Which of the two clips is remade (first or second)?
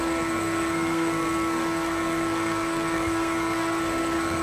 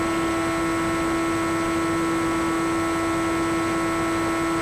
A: first